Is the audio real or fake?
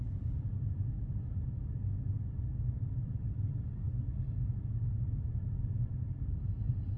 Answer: real